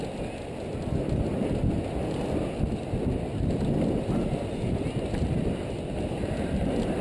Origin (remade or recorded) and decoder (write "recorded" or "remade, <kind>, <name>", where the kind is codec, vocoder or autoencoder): recorded